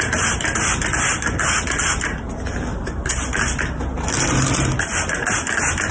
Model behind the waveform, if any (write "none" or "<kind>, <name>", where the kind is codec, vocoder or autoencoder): none